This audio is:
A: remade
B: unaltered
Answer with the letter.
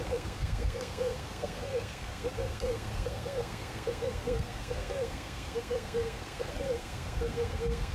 A